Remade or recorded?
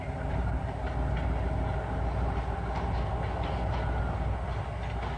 recorded